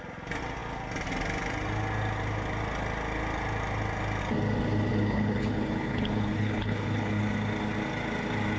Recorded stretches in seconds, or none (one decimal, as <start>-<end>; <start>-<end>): 0.0-4.9; 7.2-8.6